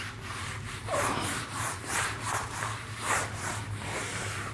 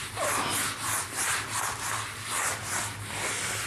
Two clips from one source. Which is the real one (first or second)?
second